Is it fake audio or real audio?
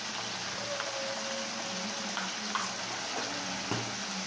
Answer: real